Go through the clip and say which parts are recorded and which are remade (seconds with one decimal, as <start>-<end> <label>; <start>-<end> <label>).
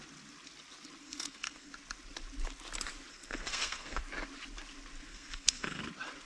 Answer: 0.0-1.0 recorded; 1.0-1.7 remade; 1.7-3.1 recorded; 3.1-4.0 remade; 4.0-5.1 recorded; 5.1-5.8 remade; 5.8-6.3 recorded